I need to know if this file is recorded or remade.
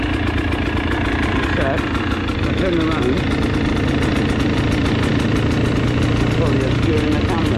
recorded